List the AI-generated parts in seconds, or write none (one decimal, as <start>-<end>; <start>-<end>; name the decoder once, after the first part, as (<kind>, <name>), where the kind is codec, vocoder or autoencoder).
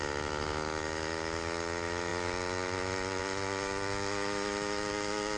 0.0-5.4 (autoencoder, DAC-VAE)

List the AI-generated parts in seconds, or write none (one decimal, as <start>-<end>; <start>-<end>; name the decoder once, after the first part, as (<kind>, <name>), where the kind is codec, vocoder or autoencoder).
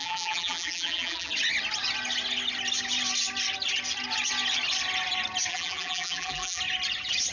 0.0-1.3 (vocoder, BigVGAN v2); 5.5-6.6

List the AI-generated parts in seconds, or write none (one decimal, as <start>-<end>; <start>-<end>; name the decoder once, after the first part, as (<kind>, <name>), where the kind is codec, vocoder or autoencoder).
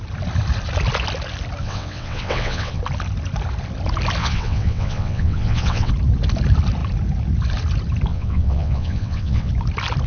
1.6-2.8 (vocoder, WaveNeXt); 4.2-5.9; 8.1-9.5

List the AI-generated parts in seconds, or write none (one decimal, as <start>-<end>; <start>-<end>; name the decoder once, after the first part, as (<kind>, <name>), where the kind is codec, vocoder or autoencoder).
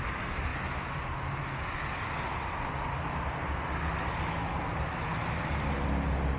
none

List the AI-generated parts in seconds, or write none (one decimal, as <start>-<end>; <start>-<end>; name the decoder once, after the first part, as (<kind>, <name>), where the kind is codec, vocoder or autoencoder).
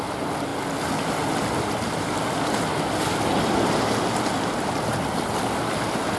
none